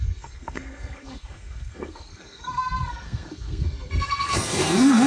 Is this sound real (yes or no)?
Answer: no